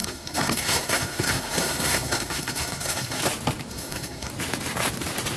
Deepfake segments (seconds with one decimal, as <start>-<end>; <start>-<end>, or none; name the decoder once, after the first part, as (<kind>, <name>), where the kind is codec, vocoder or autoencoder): 0.0-3.2 (codec, SNAC); 3.7-4.3